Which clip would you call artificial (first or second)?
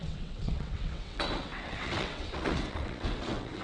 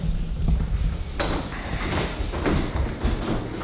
first